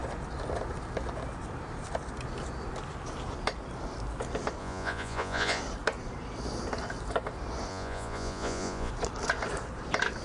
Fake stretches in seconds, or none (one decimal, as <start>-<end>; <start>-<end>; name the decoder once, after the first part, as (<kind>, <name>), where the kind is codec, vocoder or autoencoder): 4.6-5.6 (vocoder, Vocos); 7.7-8.9